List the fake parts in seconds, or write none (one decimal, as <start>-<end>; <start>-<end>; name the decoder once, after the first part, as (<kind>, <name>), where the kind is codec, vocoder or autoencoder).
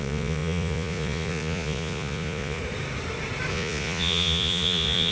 0.0-2.6 (vocoder, Vocos); 3.5-5.1